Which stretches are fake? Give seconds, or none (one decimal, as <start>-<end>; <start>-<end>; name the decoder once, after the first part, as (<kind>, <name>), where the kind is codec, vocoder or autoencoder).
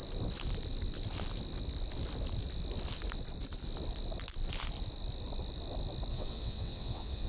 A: 6.1-7.3 (vocoder, WaveNeXt)